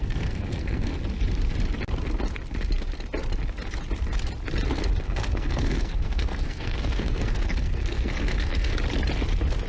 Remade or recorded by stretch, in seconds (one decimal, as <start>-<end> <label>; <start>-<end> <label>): 0.0-0.9 remade; 0.9-5.0 recorded; 5.0-8.7 remade; 8.7-9.7 recorded